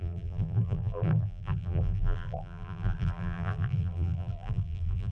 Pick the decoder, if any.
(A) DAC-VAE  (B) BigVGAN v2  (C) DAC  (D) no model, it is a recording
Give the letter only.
B